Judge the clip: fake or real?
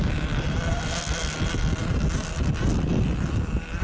real